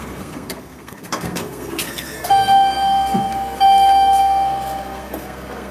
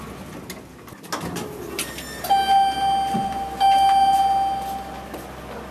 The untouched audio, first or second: second